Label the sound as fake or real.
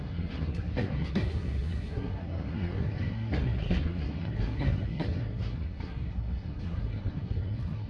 fake